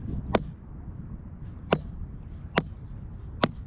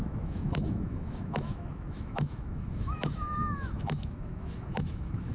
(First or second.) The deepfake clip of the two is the second